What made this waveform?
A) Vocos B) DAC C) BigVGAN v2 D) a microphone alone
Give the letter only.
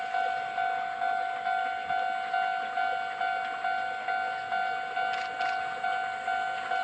D